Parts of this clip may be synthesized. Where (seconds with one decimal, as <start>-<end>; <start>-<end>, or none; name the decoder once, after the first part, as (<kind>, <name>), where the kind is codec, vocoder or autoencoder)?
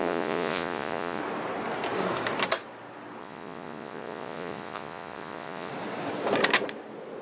0.0-1.2 (vocoder, Vocos); 3.2-5.7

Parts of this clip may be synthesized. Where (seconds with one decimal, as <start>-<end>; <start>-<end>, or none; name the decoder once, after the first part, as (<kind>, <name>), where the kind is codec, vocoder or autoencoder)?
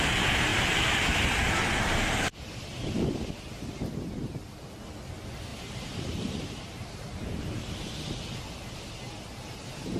0.5-2.2 (vocoder, BigVGAN v2); 2.7-3.9; 5.5-7.9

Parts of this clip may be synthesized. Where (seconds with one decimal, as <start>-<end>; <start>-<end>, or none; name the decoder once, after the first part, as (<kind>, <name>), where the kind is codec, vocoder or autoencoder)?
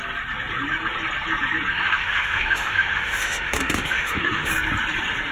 1.7-4.5 (autoencoder, DAC-VAE)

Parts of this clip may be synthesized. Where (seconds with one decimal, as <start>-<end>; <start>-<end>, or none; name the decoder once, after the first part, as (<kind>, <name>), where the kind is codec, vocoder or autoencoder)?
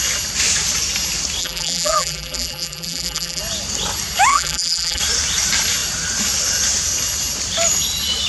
1.4-3.4 (vocoder, BigVGAN v2); 4.3-5.0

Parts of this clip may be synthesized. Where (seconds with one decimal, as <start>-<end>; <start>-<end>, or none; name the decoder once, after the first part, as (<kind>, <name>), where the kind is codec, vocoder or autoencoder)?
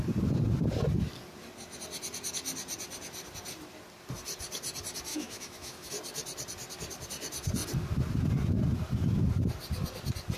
5.1-5.9 (autoencoder, DAC-VAE)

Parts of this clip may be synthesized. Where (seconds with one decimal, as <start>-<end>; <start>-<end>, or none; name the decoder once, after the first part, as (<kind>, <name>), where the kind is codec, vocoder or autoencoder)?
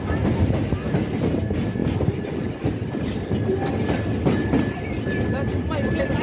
none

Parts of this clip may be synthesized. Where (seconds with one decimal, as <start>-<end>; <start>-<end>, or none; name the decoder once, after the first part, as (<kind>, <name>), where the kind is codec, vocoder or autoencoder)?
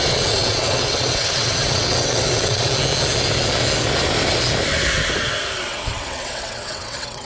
0.0-2.7 (vocoder, WaveNeXt); 5.6-7.2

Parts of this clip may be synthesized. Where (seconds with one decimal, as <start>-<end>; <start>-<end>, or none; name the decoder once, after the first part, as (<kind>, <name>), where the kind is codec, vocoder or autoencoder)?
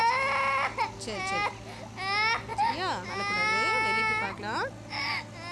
none